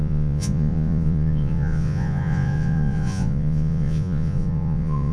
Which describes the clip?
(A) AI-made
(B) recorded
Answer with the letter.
A